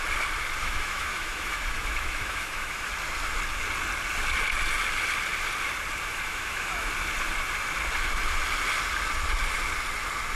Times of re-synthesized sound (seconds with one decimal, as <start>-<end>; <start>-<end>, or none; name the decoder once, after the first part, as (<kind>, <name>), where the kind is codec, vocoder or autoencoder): 0.6-2.9 (autoencoder, DAC-VAE); 6.1-6.9